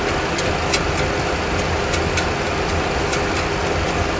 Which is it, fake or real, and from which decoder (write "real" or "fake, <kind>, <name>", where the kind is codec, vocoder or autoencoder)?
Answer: real